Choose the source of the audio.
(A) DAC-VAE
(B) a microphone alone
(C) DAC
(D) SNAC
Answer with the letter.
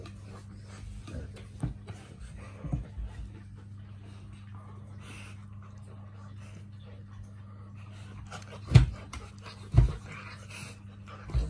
B